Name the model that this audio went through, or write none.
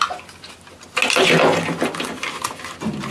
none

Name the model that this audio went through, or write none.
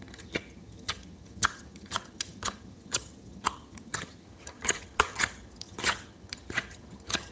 vocoder, HiFi-GAN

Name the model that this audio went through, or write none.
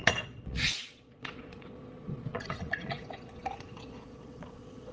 vocoder, Vocos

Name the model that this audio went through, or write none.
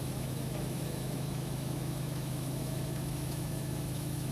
autoencoder, DAC-VAE